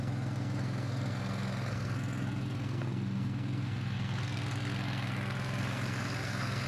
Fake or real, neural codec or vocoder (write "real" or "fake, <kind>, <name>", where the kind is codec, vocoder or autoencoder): fake, codec, SNAC